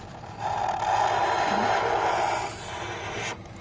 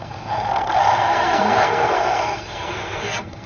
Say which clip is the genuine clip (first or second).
first